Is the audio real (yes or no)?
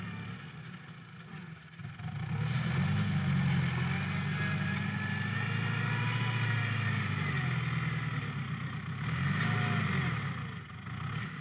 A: yes